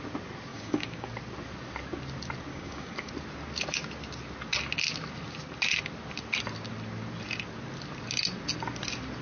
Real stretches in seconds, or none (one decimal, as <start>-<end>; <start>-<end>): 0.0-0.5; 1.1-2.5; 3.1-9.2